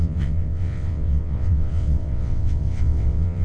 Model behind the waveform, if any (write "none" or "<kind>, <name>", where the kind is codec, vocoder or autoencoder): vocoder, WaveNeXt